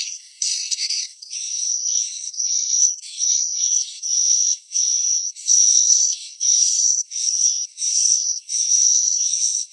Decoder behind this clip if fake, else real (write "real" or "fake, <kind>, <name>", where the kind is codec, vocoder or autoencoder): fake, codec, SNAC